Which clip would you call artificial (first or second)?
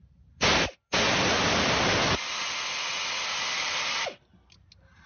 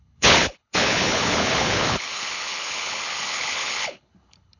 second